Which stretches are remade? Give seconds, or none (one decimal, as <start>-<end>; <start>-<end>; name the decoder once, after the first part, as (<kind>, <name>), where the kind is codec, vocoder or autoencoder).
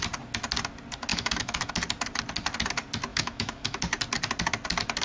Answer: 1.1-1.7 (autoencoder, DAC-VAE); 3.1-3.8